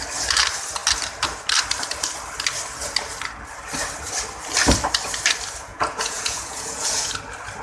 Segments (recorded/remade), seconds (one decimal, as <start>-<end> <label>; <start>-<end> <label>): 0.0-5.7 recorded; 5.7-7.1 remade; 7.1-7.6 recorded